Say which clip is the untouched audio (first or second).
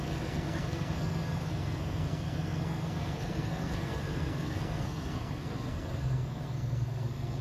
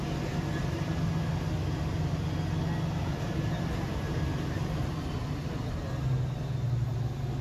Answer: second